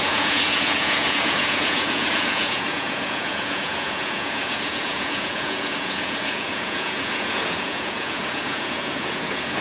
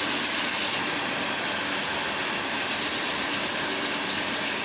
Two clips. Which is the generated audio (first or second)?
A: first